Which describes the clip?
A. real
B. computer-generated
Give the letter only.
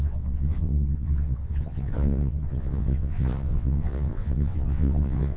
B